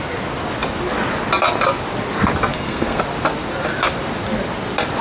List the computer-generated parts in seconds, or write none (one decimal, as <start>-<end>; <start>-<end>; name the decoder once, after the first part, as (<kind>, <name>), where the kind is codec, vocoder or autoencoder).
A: 2.5-3.0 (codec, SNAC)